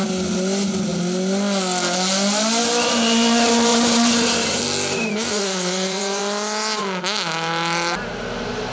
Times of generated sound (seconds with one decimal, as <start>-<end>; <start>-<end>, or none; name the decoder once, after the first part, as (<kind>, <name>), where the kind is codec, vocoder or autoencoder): 3.7-4.6 (vocoder, BigVGAN v2); 5.1-6.2

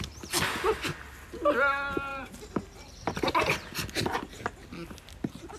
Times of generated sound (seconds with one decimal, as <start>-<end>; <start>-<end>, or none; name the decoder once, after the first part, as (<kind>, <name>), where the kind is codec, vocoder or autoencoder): 2.1-3.0 (vocoder, BigVGAN v2)

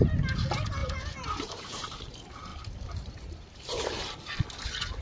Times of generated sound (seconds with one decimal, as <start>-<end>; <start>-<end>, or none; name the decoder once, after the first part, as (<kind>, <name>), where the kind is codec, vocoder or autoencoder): 0.8-2.1 (vocoder, BigVGAN v2); 2.5-4.1

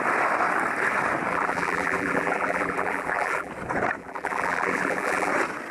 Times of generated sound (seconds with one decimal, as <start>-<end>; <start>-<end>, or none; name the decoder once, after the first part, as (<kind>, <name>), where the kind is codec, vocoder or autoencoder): 1.3-3.5 (vocoder, BigVGAN v2); 4.0-5.3

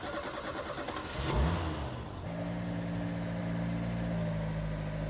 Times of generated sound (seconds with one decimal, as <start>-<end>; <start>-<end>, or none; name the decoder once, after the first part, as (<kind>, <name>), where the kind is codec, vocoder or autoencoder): none

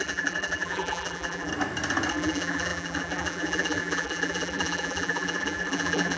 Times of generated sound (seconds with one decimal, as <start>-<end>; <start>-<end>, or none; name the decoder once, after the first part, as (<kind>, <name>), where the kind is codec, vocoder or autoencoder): 0.0-1.5 (vocoder, BigVGAN v2); 2.1-6.2

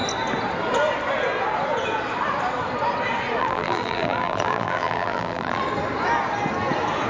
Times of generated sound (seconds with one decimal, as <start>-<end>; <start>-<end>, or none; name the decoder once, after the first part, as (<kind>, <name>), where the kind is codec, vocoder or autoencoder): 3.4-5.6 (vocoder, BigVGAN v2)